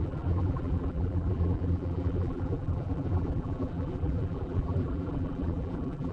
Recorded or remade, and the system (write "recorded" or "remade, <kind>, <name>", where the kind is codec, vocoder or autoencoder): remade, vocoder, BigVGAN v2